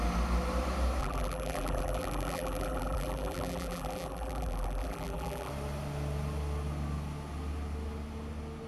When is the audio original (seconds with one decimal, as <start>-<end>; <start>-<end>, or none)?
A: 0.0-1.0; 5.5-8.7